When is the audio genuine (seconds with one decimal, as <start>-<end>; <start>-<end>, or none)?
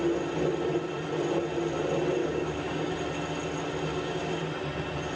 0.0-2.2; 2.9-3.9; 4.4-5.2